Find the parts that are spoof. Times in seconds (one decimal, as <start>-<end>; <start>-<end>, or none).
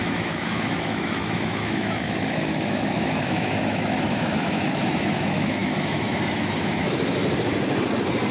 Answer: 0.0-7.2